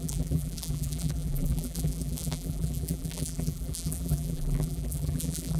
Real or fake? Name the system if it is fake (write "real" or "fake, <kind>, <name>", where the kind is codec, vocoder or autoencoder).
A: fake, vocoder, BigVGAN v2